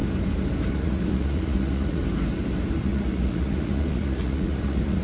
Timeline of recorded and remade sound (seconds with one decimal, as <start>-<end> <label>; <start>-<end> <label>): 0.0-0.7 recorded; 0.7-2.0 remade; 2.0-2.8 recorded; 2.8-5.0 remade